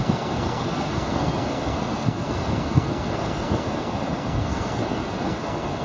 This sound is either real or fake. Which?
fake